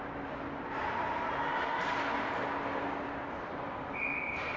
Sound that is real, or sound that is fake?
real